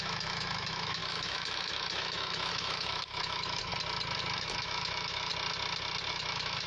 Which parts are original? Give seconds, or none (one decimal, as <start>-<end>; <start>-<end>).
3.7-4.4; 5.3-6.1